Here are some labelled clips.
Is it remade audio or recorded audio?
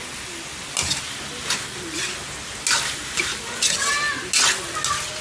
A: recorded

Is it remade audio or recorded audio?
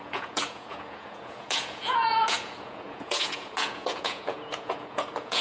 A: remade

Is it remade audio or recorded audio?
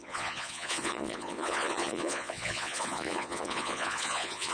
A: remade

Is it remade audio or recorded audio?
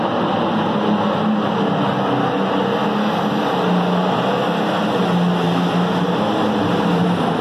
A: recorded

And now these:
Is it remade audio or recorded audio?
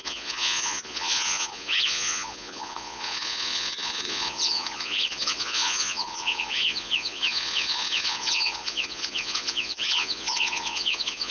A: remade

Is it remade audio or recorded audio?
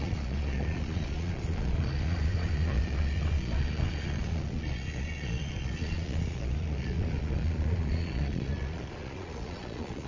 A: remade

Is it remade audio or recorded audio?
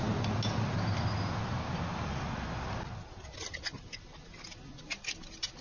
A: recorded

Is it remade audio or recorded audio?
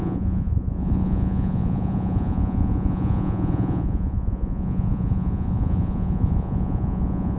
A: remade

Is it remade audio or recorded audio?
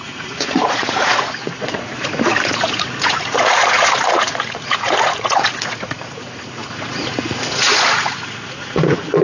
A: remade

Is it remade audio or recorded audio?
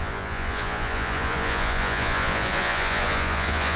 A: remade